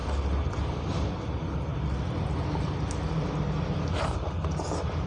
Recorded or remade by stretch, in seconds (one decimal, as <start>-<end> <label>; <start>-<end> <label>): 0.0-5.1 recorded